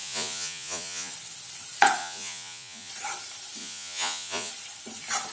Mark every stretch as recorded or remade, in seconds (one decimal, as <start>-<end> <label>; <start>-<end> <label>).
0.0-1.1 remade; 1.1-2.0 recorded; 2.0-2.9 remade; 2.9-3.6 recorded; 3.6-4.5 remade; 4.5-5.3 recorded